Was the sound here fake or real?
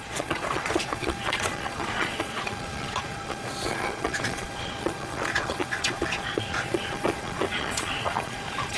fake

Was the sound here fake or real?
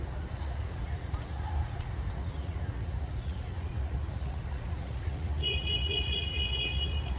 fake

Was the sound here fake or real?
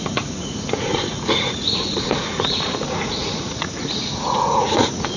fake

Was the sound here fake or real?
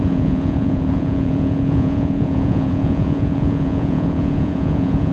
fake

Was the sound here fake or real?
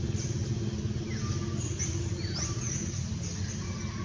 real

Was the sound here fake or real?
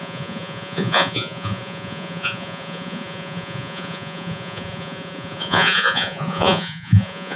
fake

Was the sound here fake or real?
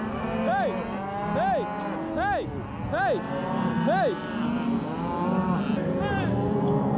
real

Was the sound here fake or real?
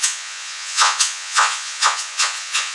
fake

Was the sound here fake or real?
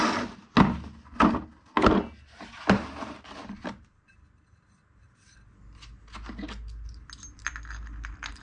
real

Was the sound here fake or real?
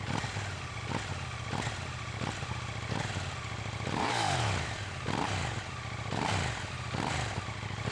real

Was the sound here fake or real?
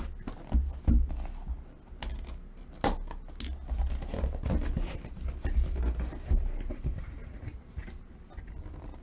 real